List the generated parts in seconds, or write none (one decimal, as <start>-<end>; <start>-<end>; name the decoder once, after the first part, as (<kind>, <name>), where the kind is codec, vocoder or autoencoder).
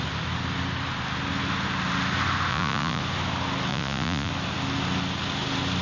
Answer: 2.5-3.0 (vocoder, Vocos); 3.7-4.3